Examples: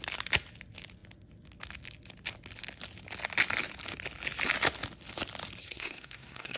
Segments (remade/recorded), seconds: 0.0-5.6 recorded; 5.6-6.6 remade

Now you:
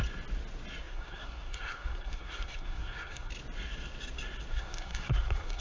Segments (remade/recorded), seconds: 0.0-0.8 recorded; 0.8-3.3 remade; 3.3-4.5 recorded; 4.5-5.6 remade